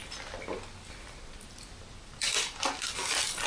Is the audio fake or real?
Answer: real